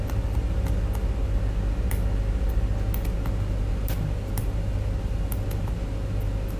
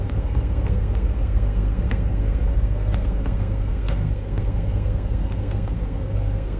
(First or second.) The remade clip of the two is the second